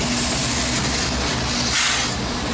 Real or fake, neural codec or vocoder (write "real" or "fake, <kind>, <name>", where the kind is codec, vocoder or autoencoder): real